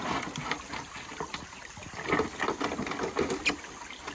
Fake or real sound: real